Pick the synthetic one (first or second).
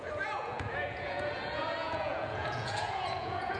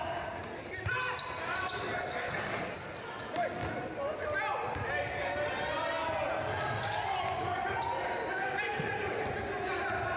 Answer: first